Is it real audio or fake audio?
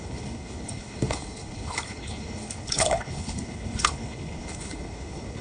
fake